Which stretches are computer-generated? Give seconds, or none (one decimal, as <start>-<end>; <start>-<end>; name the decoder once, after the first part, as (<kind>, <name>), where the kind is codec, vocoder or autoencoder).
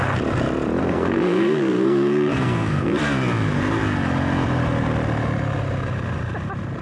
0.8-3.0 (codec, SNAC)